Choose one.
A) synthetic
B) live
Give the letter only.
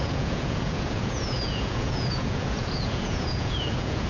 A